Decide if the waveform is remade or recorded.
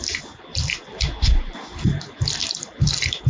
recorded